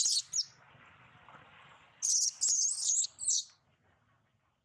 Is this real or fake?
real